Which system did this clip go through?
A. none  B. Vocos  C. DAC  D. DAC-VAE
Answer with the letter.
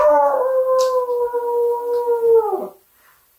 A